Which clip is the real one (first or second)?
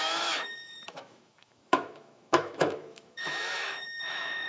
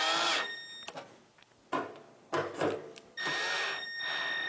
second